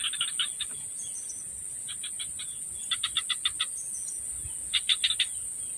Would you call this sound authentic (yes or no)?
yes